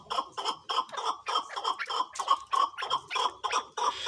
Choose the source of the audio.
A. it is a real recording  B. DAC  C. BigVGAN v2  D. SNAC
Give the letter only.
A